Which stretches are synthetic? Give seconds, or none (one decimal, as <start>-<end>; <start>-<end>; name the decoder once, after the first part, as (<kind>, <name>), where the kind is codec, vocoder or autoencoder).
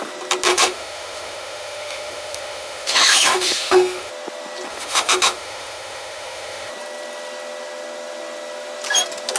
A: 0.5-4.1 (autoencoder, DAC-VAE); 4.7-6.7